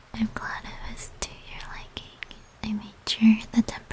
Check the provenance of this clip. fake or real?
real